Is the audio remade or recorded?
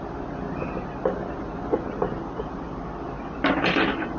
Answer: recorded